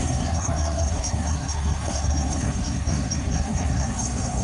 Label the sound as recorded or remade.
remade